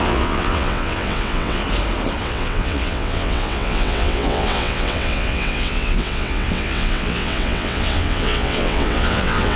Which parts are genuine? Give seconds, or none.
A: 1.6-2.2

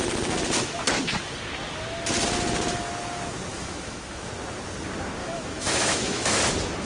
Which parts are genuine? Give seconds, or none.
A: 0.0-3.5; 4.3-5.2; 6.4-6.9

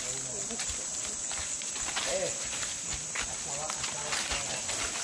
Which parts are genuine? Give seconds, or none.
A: 0.0-5.0

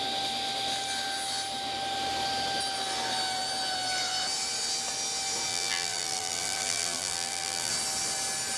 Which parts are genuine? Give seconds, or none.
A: 0.0-5.5; 7.7-8.6

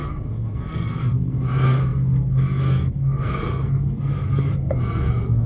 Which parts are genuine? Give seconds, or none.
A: none